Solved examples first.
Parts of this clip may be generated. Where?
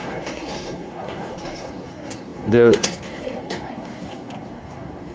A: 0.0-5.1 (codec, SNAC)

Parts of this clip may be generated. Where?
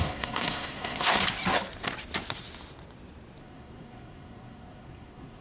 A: 0.0-1.2 (codec, SNAC); 3.4-5.4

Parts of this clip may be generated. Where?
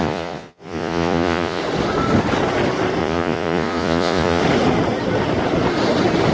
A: 0.0-1.6 (vocoder, Vocos); 3.0-4.4